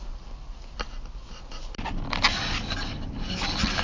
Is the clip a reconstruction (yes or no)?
no